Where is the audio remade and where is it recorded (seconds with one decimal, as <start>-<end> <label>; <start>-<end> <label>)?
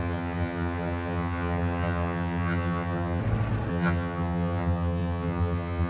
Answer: 0.0-3.2 remade; 3.2-3.7 recorded; 3.7-5.9 remade